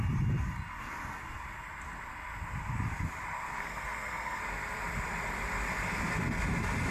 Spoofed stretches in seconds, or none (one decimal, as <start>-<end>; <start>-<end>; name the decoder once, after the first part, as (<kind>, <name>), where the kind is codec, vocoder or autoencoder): 3.6-4.4 (codec, SNAC)

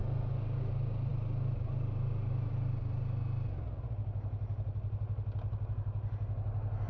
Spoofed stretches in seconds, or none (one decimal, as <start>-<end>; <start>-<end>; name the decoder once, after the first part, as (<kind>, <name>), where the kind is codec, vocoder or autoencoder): none

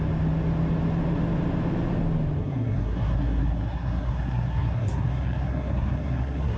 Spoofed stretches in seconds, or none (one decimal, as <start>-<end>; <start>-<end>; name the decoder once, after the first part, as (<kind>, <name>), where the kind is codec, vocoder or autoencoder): 2.4-6.6 (codec, SNAC)

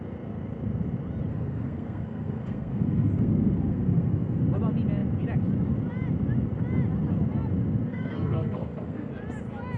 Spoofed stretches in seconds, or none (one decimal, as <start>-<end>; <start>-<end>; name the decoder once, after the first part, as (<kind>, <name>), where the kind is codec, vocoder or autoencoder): 1.3-4.4 (codec, SNAC); 7.9-9.1

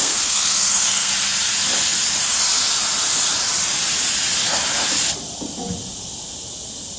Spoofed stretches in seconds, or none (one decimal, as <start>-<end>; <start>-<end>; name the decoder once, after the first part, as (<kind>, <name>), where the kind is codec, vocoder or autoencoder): 0.0-1.1 (codec, SNAC)